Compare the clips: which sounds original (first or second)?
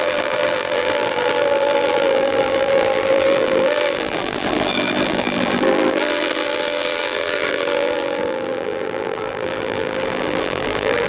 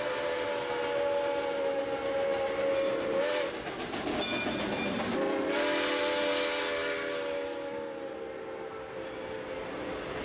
second